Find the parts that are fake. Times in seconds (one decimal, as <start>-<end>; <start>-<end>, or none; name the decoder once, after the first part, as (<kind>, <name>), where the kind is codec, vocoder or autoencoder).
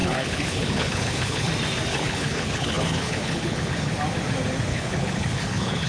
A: 0.0-1.5 (codec, HILCodec); 1.9-3.9; 4.7-5.9